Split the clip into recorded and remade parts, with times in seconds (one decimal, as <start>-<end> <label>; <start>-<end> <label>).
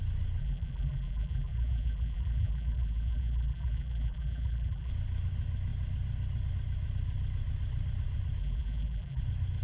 0.0-0.4 recorded; 0.4-4.9 remade; 4.9-8.4 recorded; 8.4-9.2 remade; 9.2-9.6 recorded